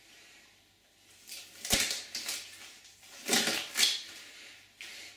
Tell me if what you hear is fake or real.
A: real